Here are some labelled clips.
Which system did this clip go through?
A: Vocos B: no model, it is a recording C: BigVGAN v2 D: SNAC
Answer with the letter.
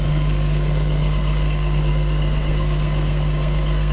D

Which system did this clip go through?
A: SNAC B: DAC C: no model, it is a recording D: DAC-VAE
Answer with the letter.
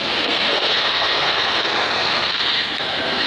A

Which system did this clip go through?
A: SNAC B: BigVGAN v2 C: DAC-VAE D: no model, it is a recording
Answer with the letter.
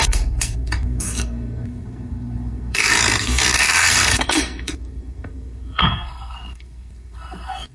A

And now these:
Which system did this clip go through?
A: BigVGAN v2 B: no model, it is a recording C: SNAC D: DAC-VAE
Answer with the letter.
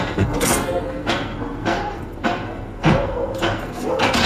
C